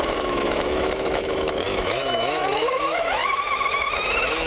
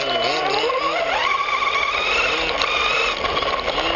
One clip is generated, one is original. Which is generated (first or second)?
first